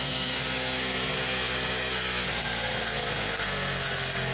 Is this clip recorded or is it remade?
remade